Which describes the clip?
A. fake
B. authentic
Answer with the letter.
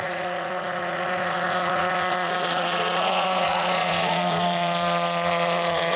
A